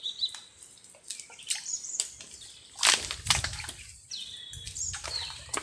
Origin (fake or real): fake